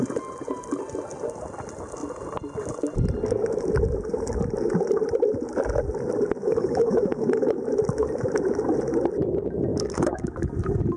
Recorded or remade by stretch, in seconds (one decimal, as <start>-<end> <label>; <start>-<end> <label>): 0.0-6.4 recorded; 6.4-7.6 remade; 7.6-9.7 recorded; 9.7-10.4 remade; 10.4-11.0 recorded